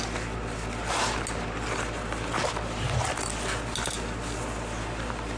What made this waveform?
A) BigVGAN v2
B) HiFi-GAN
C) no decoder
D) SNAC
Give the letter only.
C